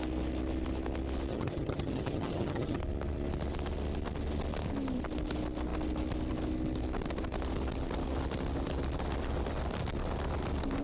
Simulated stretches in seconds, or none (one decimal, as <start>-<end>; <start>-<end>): 1.3-2.8